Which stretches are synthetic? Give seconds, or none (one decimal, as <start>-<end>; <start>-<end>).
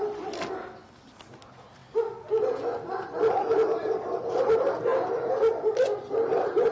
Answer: none